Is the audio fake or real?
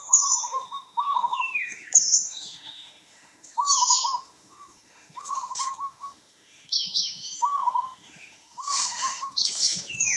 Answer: fake